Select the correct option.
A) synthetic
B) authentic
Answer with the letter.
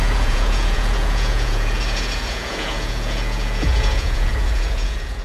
A